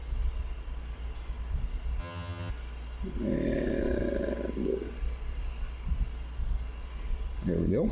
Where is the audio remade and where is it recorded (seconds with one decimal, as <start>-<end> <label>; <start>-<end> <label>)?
0.0-2.0 recorded; 2.0-2.5 remade; 2.5-7.9 recorded

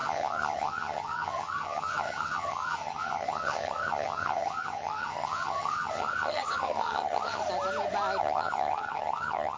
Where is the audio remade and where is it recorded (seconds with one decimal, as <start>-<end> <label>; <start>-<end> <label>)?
0.0-7.4 remade; 7.4-8.2 recorded; 8.2-9.6 remade

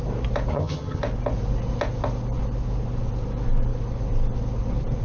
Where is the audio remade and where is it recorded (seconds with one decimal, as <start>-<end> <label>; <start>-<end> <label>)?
0.0-0.5 recorded; 0.5-1.0 remade; 1.0-5.0 recorded

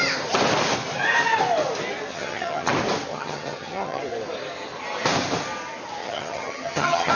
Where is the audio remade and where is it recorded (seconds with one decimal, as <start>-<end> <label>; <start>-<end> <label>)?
0.0-2.1 recorded; 2.1-2.7 remade; 2.7-3.1 recorded; 3.1-4.0 remade; 4.0-6.0 recorded; 6.0-7.1 remade

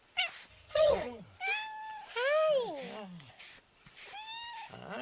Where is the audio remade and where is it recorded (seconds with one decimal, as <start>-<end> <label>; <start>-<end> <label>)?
0.0-0.5 recorded; 0.5-1.2 remade; 1.2-5.0 recorded

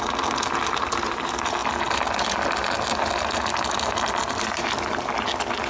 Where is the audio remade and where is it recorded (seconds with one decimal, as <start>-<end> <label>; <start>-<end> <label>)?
0.0-5.7 recorded